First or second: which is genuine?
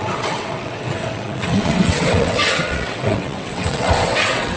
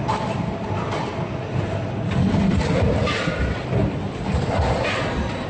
second